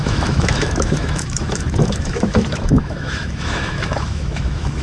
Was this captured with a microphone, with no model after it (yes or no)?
no